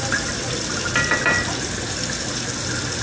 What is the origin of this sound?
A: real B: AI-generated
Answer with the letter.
A